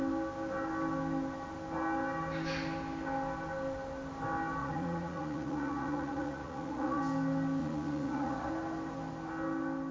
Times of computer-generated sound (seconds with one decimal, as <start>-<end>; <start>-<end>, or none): 4.6-7.0; 7.6-8.5